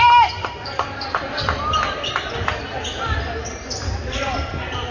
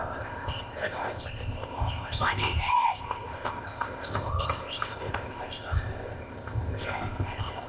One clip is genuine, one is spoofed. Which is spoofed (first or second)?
second